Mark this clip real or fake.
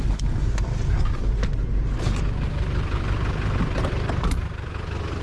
real